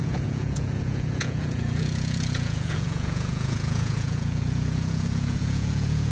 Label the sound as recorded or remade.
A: remade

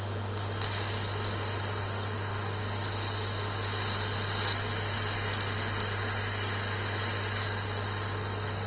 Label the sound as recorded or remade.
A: recorded